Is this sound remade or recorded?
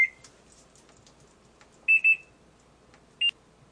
recorded